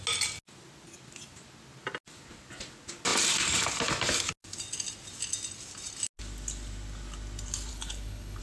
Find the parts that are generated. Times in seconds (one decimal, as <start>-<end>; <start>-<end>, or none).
7.7-8.4